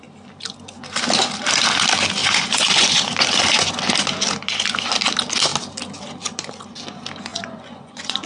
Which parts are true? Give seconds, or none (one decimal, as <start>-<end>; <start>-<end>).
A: 0.0-2.2; 3.7-7.3

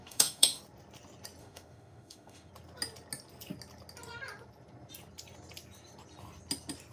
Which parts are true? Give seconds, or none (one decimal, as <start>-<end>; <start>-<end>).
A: 0.6-1.4; 2.5-6.9

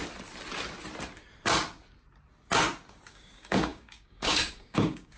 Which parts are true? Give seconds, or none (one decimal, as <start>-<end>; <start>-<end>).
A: 0.0-3.1